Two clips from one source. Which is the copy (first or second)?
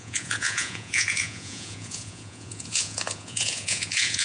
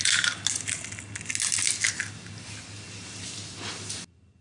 first